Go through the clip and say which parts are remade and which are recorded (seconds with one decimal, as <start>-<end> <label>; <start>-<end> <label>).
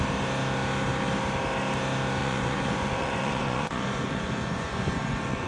0.0-2.2 recorded; 2.2-5.5 remade